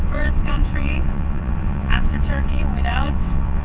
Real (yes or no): no